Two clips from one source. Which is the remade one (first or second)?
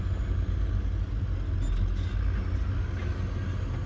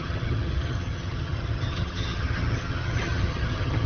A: second